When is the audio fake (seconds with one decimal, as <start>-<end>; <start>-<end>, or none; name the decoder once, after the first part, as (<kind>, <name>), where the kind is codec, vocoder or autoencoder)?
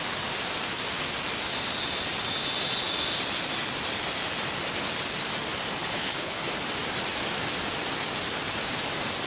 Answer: 5.8-6.5 (codec, HILCodec)